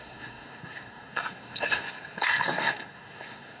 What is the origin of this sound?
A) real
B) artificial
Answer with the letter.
B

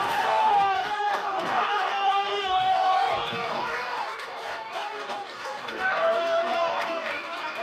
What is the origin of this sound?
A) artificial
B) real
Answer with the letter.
A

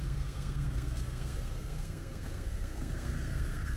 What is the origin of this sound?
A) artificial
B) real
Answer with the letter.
A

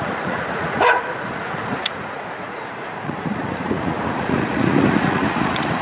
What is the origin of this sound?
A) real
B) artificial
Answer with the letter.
B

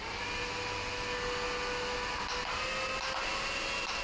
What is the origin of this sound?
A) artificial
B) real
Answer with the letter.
B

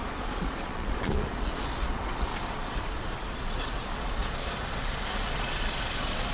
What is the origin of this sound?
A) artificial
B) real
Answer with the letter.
A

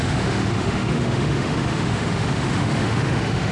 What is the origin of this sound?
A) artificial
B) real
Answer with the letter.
A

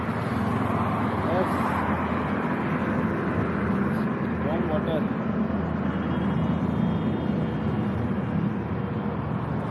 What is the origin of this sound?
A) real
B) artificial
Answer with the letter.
A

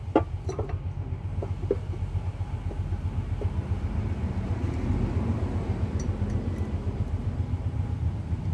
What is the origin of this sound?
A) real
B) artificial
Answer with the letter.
A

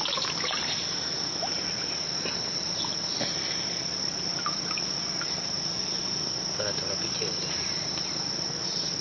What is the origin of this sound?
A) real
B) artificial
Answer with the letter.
A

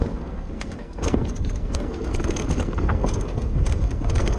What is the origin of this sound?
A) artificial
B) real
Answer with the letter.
A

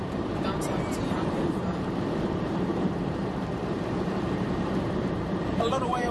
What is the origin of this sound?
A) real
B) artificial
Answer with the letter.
B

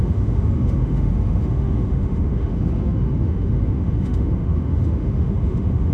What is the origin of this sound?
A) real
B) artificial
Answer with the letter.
B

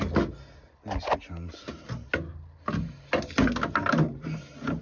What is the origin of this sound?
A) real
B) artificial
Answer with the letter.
A